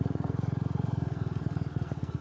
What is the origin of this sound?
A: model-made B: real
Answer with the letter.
A